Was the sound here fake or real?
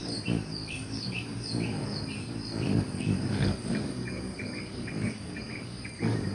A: fake